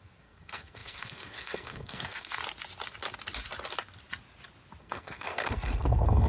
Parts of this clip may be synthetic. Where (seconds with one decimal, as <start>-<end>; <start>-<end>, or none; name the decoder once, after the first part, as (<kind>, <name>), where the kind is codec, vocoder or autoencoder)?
0.0-2.4 (codec, SNAC); 4.8-6.3